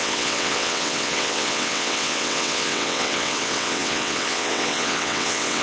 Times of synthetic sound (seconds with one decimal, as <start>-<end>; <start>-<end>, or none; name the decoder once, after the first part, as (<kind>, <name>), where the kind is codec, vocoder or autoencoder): 0.0-5.6 (vocoder, WaveNeXt)